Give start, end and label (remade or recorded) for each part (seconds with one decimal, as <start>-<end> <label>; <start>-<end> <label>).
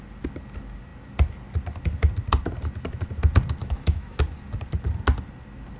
0.0-3.6 recorded; 3.6-4.2 remade; 4.2-5.8 recorded